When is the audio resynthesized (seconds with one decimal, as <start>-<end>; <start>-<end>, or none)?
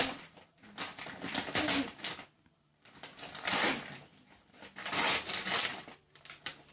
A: none